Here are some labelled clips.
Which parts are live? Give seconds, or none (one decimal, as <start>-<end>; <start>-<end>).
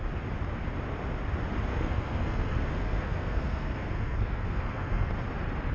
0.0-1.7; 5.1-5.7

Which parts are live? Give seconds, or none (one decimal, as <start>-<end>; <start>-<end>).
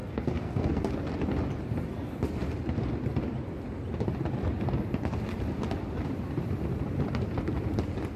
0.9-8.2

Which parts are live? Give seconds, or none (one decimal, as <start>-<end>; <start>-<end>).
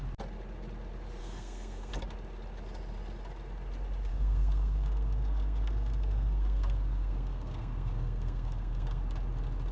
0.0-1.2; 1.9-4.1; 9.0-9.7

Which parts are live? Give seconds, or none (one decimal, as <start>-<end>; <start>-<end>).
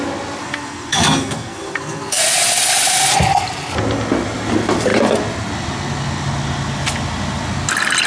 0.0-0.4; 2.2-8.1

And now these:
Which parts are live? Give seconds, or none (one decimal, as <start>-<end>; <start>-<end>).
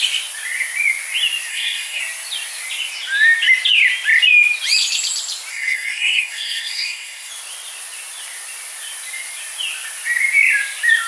0.0-1.5; 2.0-5.5; 7.3-11.1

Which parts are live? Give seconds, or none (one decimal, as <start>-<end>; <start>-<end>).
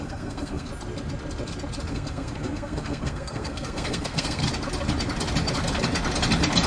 0.7-1.9; 4.4-6.7